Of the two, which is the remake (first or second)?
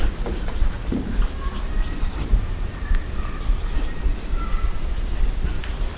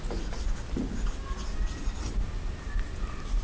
first